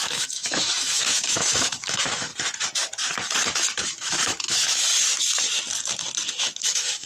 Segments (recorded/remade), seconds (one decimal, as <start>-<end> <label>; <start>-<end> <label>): 0.0-2.3 remade; 2.3-3.9 recorded; 3.9-4.9 remade; 4.9-6.4 recorded; 6.4-7.1 remade

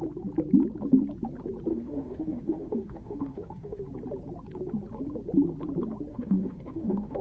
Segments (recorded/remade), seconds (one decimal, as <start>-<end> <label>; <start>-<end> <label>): 0.0-1.7 recorded; 1.7-3.8 remade; 3.8-6.1 recorded; 6.1-7.2 remade